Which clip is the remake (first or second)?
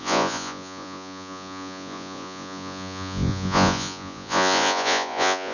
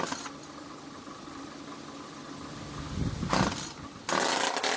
first